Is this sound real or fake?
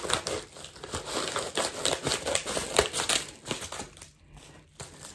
real